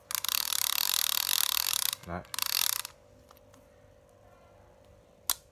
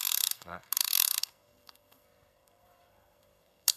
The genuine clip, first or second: first